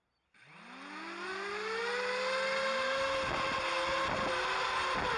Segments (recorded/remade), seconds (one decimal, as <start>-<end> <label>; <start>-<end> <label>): 0.0-5.2 recorded